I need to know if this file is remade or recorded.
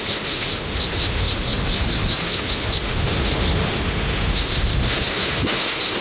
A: remade